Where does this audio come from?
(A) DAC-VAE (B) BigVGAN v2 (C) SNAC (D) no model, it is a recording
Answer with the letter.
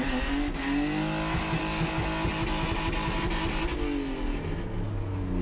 D